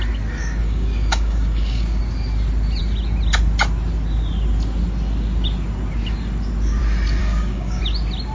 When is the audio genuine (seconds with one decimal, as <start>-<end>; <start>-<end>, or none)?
0.0-0.6; 2.0-7.2; 7.8-8.3